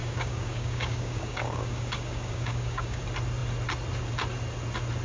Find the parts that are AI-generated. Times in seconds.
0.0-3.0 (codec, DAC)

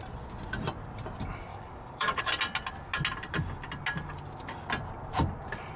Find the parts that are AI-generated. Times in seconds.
1.5-2.2 (codec, DAC)

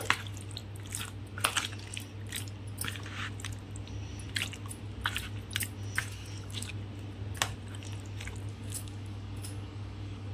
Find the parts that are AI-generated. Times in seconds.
6.0-6.7 (codec, DAC); 8.5-10.3

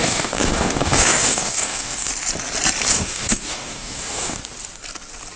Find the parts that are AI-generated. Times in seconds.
0.0-2.1 (codec, DAC); 2.9-4.4

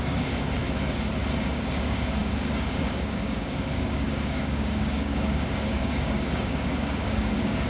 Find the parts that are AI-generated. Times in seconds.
0.0-0.6 (codec, DAC); 1.4-7.7